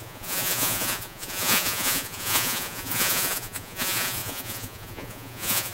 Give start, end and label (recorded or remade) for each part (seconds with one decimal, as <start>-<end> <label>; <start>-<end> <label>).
0.0-5.7 remade